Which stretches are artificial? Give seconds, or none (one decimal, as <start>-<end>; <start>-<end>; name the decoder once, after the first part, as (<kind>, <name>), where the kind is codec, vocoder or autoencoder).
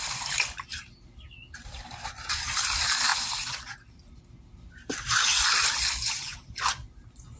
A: none